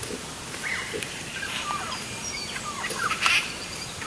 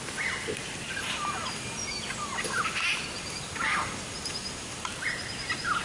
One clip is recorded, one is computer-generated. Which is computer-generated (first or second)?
first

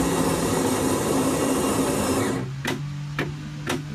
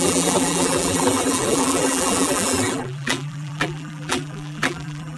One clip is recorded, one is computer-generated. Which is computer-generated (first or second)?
second